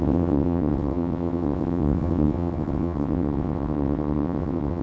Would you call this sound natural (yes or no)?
no